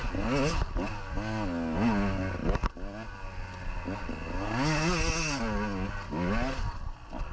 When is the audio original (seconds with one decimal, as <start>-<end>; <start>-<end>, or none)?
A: 0.0-7.3